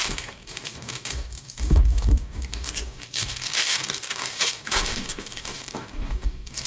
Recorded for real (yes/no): no